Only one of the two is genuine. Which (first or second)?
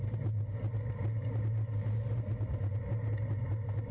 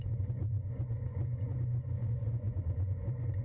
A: first